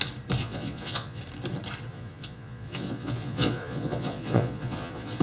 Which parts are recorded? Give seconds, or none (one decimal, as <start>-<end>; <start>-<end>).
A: 0.0-0.4; 1.2-1.9